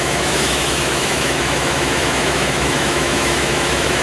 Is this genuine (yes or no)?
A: no